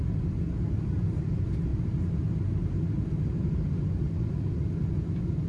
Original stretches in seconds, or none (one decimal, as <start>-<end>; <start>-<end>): 0.0-5.5